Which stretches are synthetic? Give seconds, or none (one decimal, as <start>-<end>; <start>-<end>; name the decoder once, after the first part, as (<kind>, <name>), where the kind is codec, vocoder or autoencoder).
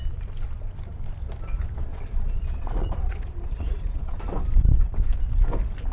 1.9-4.2 (vocoder, Vocos)